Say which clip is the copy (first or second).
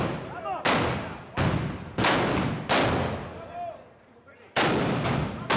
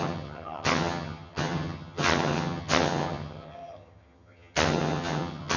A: second